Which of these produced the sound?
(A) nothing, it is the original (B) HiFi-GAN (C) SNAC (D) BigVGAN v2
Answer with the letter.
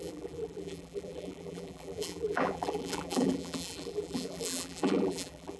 D